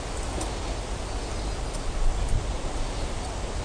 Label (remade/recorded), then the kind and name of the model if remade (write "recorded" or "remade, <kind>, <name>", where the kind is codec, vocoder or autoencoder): recorded